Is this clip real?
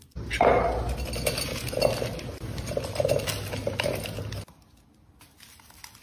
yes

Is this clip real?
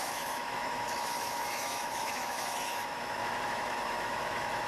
no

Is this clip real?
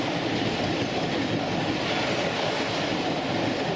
yes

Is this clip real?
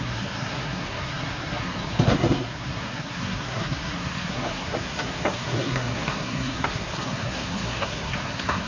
no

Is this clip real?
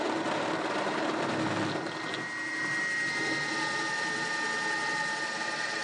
yes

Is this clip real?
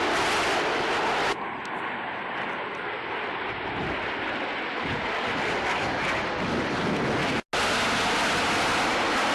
yes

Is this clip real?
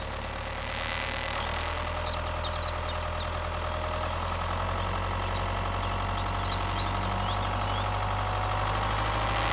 yes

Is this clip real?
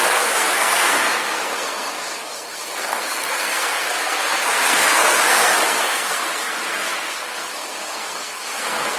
no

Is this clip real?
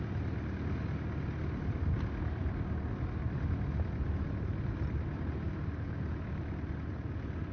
yes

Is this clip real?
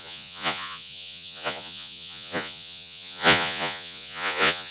no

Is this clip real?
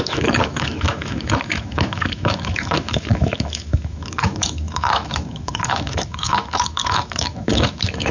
no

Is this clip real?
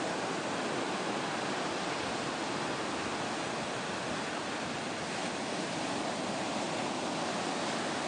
yes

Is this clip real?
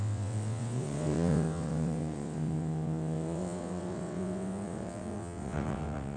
no